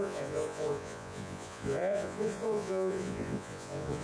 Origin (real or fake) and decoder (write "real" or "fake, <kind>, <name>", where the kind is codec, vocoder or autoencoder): fake, vocoder, Vocos